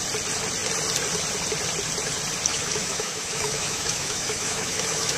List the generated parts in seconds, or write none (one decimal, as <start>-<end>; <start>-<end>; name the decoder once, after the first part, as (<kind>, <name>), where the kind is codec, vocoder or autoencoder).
2.5-5.2 (autoencoder, DAC-VAE)